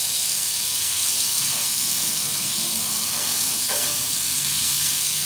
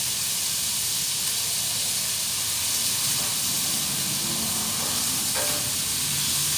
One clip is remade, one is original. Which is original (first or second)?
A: second